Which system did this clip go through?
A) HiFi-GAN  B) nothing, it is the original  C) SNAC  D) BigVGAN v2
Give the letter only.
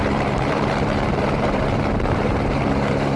D